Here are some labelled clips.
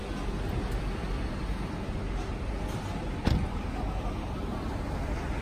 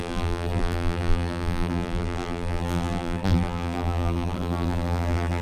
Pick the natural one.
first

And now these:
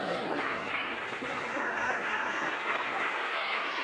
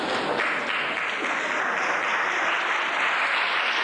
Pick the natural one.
second